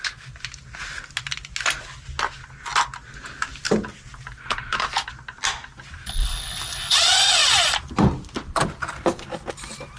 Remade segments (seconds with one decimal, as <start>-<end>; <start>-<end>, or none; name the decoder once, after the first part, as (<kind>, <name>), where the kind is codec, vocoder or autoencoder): none